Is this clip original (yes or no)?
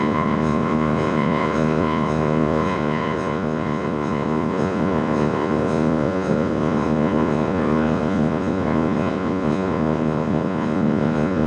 no